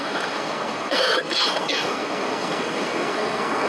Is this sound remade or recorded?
remade